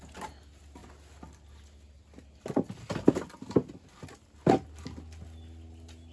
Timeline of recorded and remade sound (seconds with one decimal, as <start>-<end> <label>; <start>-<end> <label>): 0.0-6.1 recorded